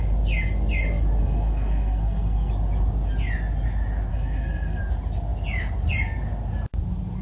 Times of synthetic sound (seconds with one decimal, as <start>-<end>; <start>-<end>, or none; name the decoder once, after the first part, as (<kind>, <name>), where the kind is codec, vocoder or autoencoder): 1.2-2.5 (codec, SNAC); 4.1-4.8